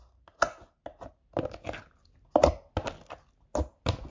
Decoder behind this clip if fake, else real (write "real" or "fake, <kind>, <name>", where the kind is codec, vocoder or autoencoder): real